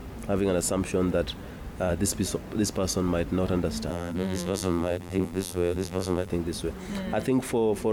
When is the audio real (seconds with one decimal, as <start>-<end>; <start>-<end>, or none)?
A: 0.0-3.9; 6.3-7.9